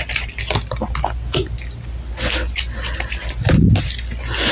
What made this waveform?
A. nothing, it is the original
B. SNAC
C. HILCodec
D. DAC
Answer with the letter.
A